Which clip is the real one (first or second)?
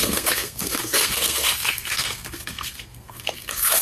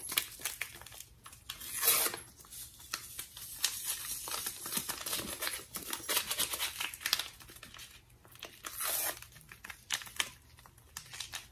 second